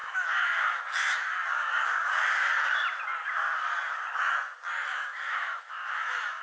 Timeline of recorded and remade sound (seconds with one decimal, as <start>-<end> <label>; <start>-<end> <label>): 0.0-0.8 remade; 0.8-1.5 recorded; 1.5-2.2 remade; 2.2-4.9 recorded; 4.9-6.4 remade